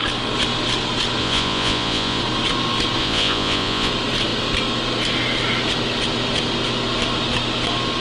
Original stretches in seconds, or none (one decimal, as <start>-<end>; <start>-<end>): 0.0-1.2; 2.2-3.0; 3.9-8.0